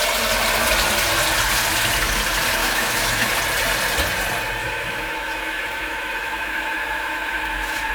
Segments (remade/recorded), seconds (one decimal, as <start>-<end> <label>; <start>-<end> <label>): 0.0-2.6 recorded; 2.6-3.3 remade; 3.3-4.6 recorded; 4.6-7.9 remade